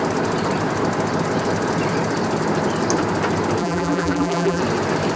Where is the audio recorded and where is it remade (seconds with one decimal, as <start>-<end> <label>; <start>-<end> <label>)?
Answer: 0.0-3.6 recorded; 3.6-4.6 remade; 4.6-5.2 recorded